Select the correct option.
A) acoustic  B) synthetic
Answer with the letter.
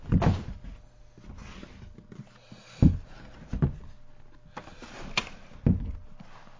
A